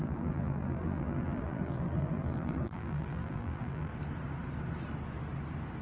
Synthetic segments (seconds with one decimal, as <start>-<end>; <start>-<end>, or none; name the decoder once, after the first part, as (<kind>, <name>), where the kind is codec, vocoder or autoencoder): 0.0-3.9 (vocoder, BigVGAN v2)